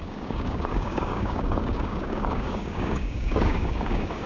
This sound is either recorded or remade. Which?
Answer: remade